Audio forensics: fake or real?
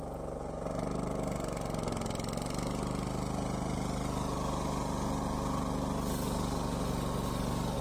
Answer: real